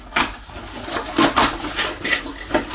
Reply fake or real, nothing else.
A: real